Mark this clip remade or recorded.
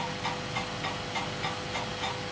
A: recorded